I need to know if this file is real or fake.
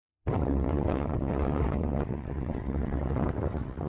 fake